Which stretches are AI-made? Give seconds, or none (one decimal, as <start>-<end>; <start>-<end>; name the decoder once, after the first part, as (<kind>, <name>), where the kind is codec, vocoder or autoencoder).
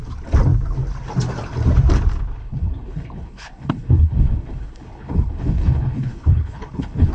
2.4-7.1 (codec, HILCodec)